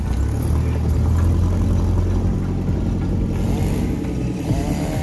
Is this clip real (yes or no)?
yes